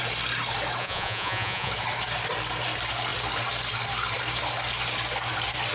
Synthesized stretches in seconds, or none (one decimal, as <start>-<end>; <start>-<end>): 0.8-1.7